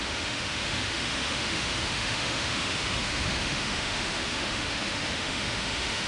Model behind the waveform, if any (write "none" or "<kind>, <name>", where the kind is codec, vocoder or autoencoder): autoencoder, DAC-VAE